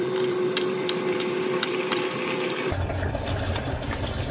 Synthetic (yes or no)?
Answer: yes